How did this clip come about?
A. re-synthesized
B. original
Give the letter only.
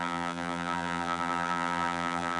A